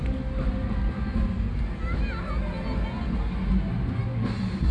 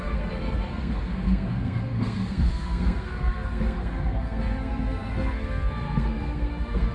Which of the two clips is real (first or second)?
first